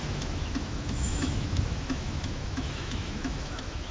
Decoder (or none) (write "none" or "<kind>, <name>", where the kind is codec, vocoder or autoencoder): autoencoder, DAC-VAE